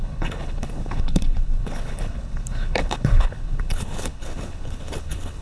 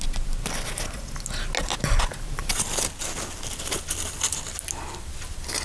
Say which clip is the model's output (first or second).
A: first